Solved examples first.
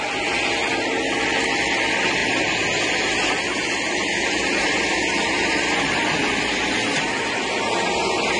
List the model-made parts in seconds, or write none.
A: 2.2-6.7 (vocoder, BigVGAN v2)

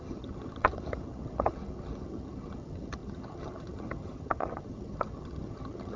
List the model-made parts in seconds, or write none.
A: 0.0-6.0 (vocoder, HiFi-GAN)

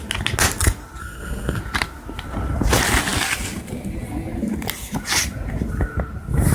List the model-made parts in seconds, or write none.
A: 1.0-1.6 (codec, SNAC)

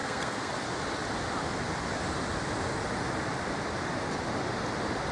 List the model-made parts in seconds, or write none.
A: 0.0-0.5 (codec, SNAC)

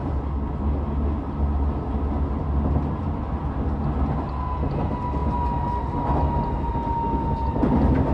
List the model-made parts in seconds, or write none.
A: none